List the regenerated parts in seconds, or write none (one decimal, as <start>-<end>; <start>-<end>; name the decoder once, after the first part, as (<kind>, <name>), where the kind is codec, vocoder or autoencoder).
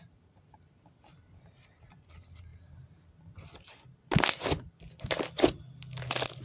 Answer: none